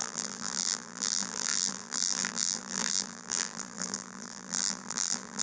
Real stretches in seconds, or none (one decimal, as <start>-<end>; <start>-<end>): none